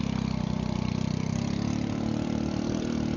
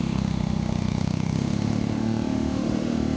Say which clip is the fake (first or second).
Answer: second